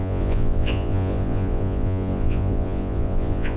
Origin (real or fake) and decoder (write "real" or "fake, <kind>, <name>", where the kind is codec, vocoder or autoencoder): fake, vocoder, Vocos